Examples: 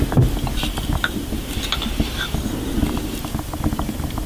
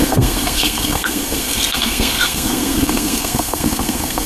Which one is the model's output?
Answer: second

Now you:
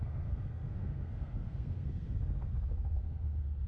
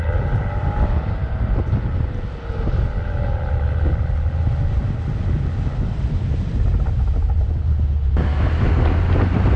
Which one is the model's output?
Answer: first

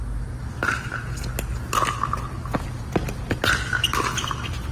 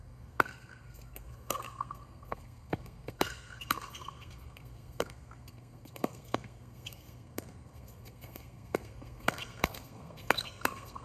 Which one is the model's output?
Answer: second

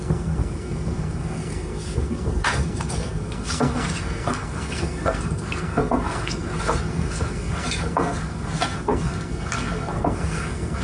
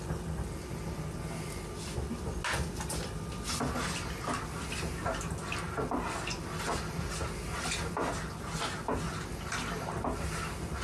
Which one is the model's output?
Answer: first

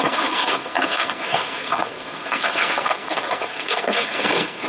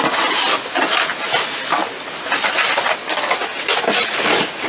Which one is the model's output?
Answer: first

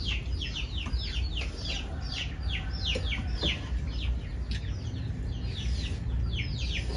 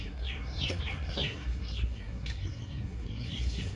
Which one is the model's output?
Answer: second